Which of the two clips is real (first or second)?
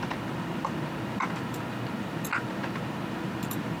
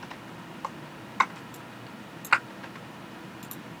second